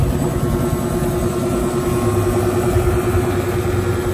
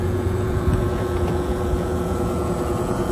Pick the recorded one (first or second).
first